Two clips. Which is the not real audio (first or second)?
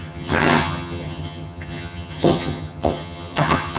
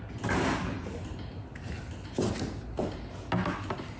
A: first